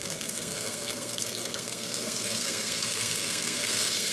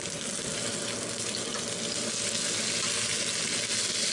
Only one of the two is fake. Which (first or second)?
first